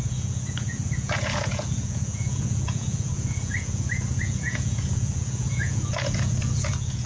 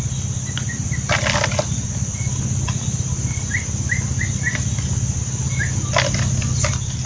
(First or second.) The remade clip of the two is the first